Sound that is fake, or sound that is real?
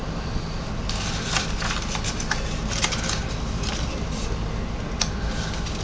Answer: real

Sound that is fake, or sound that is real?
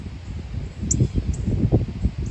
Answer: real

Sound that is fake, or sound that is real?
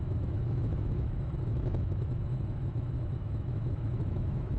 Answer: fake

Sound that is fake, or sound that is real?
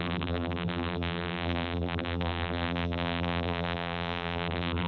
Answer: fake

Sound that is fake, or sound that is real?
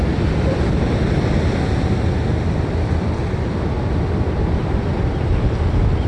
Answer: real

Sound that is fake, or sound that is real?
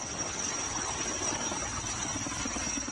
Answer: real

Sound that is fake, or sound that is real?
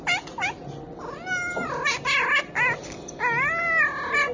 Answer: real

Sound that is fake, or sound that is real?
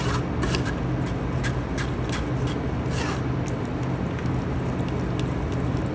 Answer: real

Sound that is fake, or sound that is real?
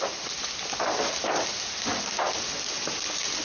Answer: real